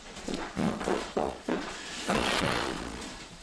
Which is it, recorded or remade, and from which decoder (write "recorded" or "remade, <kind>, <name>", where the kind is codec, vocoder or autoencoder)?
remade, vocoder, Vocos